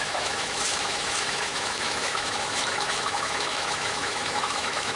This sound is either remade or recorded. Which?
remade